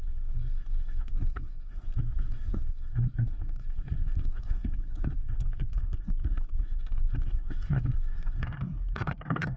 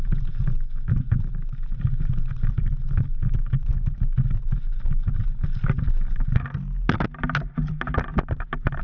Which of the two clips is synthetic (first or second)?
first